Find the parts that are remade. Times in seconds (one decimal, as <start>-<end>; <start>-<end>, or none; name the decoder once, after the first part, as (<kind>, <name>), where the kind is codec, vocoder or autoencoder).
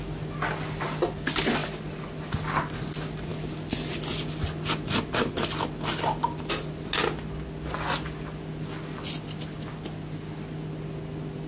none